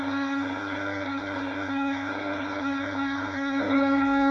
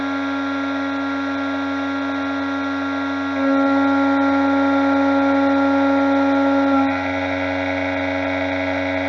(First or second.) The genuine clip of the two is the second